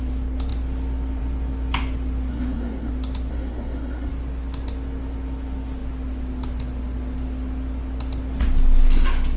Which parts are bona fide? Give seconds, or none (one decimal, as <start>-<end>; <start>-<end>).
0.0-2.3; 2.9-3.3; 4.1-9.4